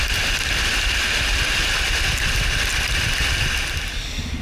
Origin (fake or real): real